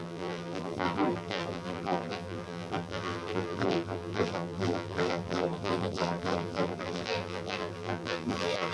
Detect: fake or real fake